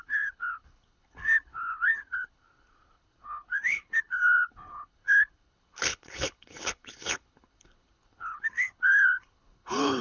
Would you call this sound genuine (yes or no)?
no